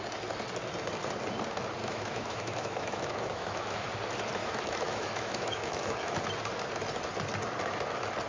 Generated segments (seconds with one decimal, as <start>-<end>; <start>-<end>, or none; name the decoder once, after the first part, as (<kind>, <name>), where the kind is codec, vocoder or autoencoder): 1.8-3.9 (autoencoder, DAC-VAE); 4.4-6.2